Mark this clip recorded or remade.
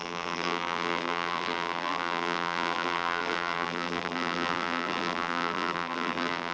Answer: remade